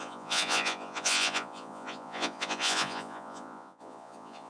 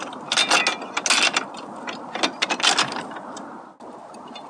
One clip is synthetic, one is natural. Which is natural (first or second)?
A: second